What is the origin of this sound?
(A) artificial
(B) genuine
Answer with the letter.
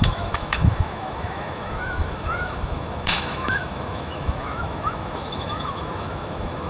A